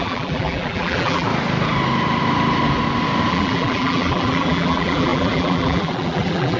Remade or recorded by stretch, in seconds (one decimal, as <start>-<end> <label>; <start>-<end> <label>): 0.0-1.3 remade; 1.3-3.3 recorded; 3.3-6.6 remade